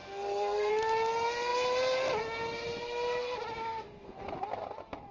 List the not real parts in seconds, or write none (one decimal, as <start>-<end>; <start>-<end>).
0.0-0.7; 3.6-4.2